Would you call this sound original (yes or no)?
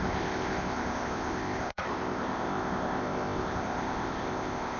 no